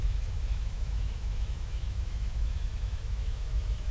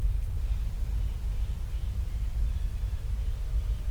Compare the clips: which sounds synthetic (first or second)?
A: first